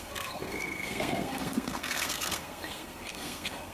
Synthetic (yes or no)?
yes